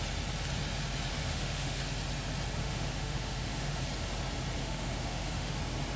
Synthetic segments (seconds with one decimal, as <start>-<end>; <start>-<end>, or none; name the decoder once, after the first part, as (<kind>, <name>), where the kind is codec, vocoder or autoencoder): 1.1-1.8 (autoencoder, DAC-VAE); 2.6-3.8; 4.6-5.6